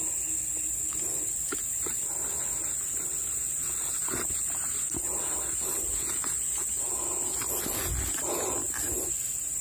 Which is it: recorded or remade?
recorded